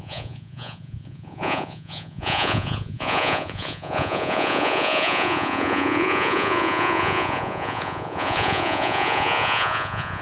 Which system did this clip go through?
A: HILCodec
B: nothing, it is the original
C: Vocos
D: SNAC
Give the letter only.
C